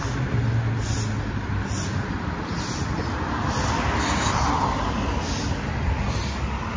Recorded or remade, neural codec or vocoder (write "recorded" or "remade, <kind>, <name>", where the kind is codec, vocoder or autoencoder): recorded